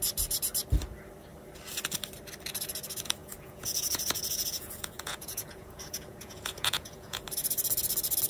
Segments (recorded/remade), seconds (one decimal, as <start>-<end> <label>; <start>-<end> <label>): 0.0-3.2 recorded; 3.2-7.2 remade; 7.2-8.3 recorded